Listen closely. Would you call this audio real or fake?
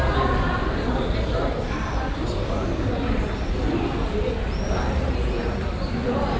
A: real